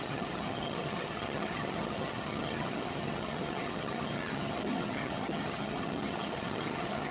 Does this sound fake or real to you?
fake